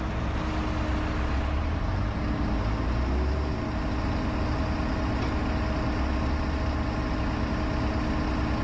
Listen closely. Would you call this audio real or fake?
real